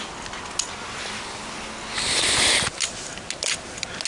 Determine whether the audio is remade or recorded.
recorded